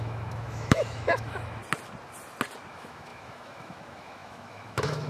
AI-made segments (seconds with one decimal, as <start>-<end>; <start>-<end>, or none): 0.0-1.6; 2.7-5.1